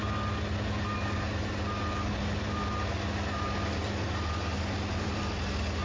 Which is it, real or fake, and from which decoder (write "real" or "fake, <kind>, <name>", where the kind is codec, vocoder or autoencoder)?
real